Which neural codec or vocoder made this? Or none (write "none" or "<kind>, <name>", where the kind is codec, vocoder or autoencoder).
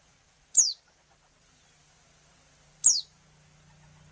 none